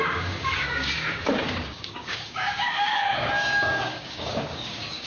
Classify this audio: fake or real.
fake